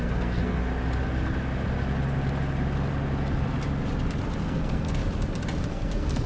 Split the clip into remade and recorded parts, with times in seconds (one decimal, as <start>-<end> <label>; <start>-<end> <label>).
0.0-0.6 remade; 0.6-4.4 recorded; 4.4-5.0 remade; 5.0-5.7 recorded; 5.7-6.3 remade